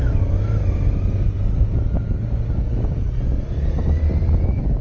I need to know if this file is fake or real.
real